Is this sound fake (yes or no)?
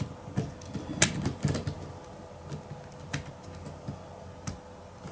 no